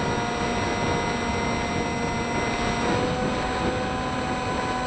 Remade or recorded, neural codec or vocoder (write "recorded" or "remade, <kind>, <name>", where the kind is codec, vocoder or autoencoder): recorded